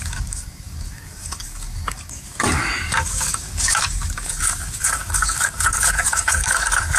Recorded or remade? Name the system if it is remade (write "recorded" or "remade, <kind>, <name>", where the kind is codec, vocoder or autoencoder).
remade, codec, DAC